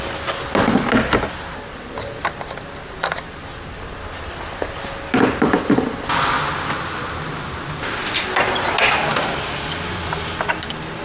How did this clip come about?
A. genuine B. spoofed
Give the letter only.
A